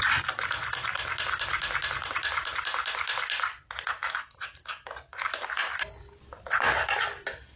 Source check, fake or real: real